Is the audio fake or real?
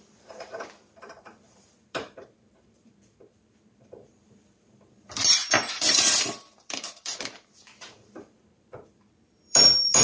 fake